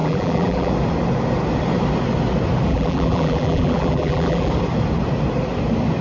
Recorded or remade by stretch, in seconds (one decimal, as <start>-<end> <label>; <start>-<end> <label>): 0.0-0.7 remade; 0.7-2.7 recorded; 2.7-4.5 remade; 4.5-6.0 recorded